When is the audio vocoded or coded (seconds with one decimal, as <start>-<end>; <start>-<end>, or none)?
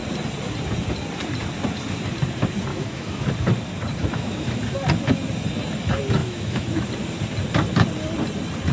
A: 2.7-3.2; 4.0-4.6; 6.2-6.9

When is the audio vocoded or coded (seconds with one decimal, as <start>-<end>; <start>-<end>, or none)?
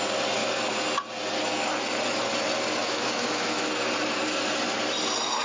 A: 2.8-3.7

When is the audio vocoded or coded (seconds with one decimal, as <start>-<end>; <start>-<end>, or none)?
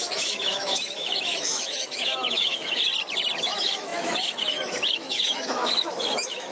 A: 0.0-2.9; 3.4-6.5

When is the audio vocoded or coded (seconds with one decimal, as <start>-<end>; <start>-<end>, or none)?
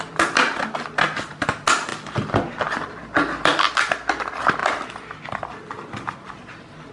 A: none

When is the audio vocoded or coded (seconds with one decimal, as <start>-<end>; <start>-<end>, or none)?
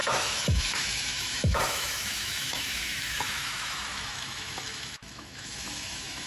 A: 0.0-6.3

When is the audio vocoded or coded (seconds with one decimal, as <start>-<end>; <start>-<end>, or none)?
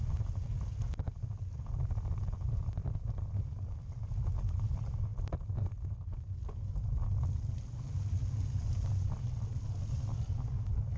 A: none